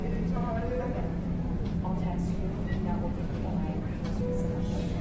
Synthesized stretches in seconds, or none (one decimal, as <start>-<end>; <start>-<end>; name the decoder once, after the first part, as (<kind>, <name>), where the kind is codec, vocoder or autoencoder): 0.7-1.1 (vocoder, BigVGAN v2); 1.8-3.3